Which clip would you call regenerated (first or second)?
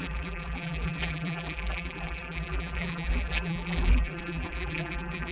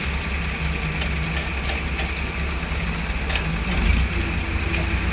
first